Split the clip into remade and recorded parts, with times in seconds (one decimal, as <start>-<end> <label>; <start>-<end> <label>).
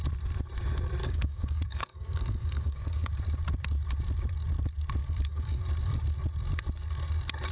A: 0.0-1.0 recorded; 1.0-3.1 remade; 3.1-5.0 recorded; 5.0-5.6 remade; 5.6-7.5 recorded